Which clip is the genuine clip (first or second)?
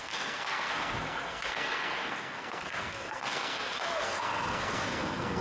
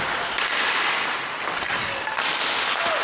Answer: second